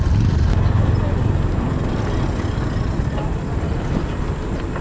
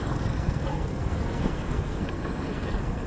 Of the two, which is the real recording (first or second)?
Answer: first